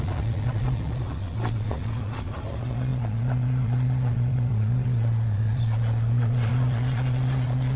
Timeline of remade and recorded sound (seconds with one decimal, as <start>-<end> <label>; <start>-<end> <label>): 0.0-7.8 remade